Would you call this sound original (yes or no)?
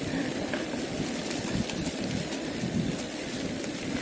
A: no